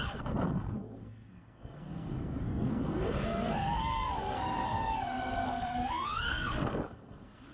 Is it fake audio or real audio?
fake